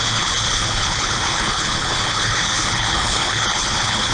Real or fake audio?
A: fake